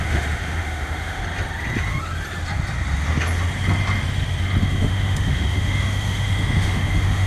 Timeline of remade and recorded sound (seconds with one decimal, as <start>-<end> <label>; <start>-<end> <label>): 0.0-1.2 remade; 1.2-4.6 recorded; 4.6-7.3 remade